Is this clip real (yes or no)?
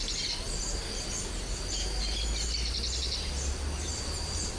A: yes